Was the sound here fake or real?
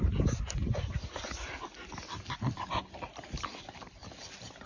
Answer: real